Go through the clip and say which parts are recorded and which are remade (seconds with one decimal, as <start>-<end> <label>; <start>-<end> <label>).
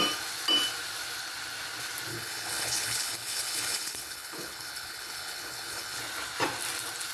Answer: 0.0-2.1 recorded; 2.1-6.0 remade; 6.0-7.1 recorded